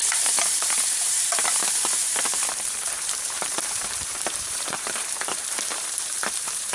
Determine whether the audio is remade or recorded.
remade